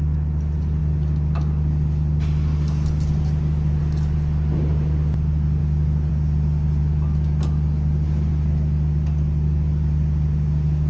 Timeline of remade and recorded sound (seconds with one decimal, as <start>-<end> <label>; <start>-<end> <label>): 0.0-5.6 recorded; 5.6-6.1 remade; 6.1-10.9 recorded